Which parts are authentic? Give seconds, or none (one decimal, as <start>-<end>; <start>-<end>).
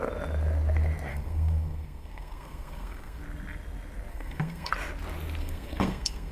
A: 0.0-1.1; 3.2-4.1; 4.7-5.4